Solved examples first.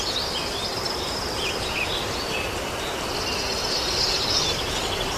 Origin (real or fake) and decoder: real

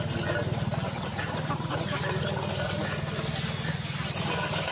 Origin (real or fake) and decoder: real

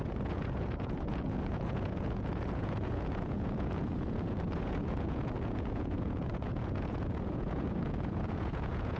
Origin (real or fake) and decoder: fake, vocoder, Vocos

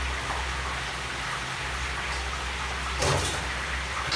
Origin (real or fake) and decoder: real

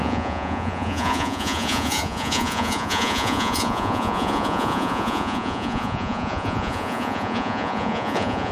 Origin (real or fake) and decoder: fake, vocoder, Vocos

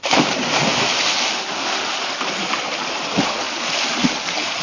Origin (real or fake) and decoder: real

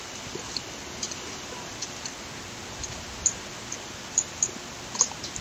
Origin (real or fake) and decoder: real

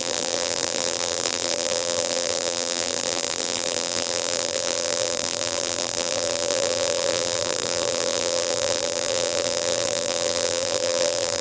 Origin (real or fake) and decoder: fake, vocoder, BigVGAN v2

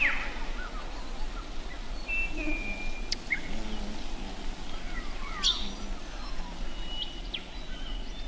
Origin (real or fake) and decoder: real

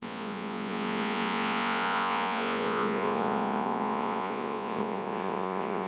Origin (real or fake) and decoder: fake, vocoder, Vocos